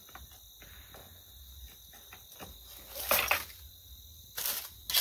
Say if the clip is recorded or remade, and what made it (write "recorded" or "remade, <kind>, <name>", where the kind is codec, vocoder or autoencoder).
recorded